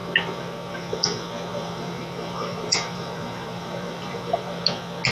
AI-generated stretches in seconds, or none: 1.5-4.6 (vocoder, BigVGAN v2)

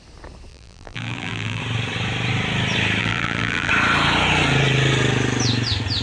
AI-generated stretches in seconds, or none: 0.5-1.6 (vocoder, BigVGAN v2); 3.0-3.7

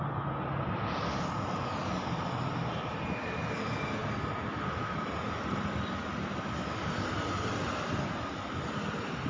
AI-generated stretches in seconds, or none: none

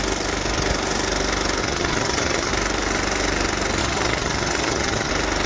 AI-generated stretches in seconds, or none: 1.6-2.5 (vocoder, HiFi-GAN); 3.8-5.1

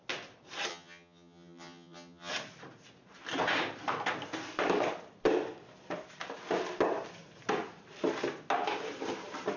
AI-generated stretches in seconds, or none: 0.7-2.3 (vocoder, HiFi-GAN)

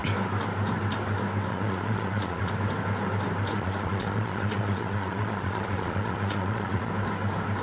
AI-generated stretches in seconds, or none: 1.5-2.5 (vocoder, Vocos); 3.5-6.9

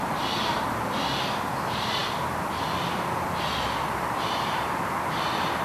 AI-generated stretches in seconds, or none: 2.0-5.6 (vocoder, BigVGAN v2)

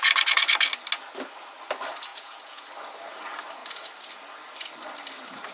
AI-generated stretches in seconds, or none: 2.1-2.6 (vocoder, Vocos)